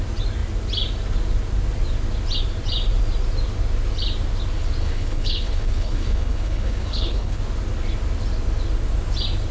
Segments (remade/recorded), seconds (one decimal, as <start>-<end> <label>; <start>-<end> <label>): 0.0-4.8 recorded; 4.8-7.4 remade; 7.4-9.5 recorded